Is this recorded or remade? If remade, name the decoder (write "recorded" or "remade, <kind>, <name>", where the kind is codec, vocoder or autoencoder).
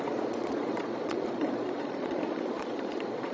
remade, vocoder, Vocos